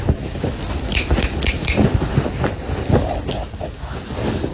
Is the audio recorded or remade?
recorded